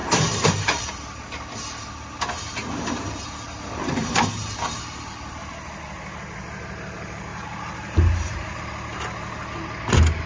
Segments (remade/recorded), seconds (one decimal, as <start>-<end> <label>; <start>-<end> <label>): 0.0-0.9 remade; 0.9-2.6 recorded; 2.6-5.5 remade; 5.5-7.3 recorded; 7.3-8.6 remade; 8.6-10.3 recorded